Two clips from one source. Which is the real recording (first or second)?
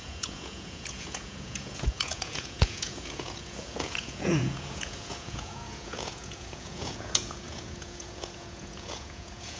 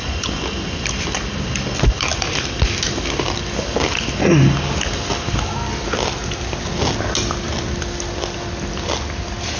second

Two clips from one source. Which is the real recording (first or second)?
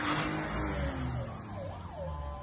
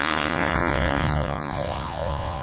first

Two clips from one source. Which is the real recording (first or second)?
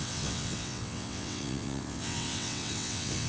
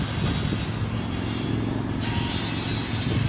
second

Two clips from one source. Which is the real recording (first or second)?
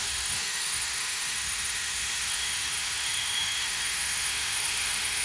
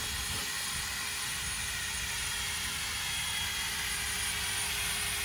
second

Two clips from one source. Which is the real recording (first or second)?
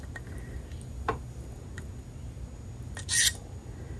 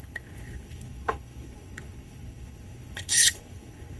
first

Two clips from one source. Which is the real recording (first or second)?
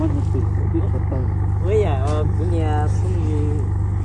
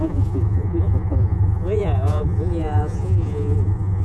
first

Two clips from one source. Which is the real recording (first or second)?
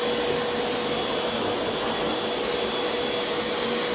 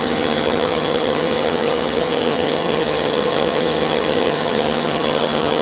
first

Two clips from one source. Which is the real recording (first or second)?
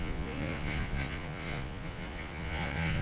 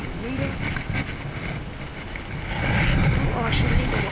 second